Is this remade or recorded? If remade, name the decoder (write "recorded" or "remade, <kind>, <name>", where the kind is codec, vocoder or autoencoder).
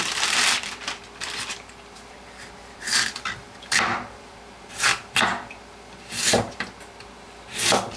remade, vocoder, BigVGAN v2